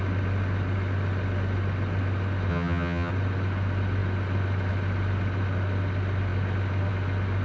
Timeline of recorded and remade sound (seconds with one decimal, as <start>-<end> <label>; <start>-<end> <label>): 0.0-2.5 recorded; 2.5-3.1 remade; 3.1-7.4 recorded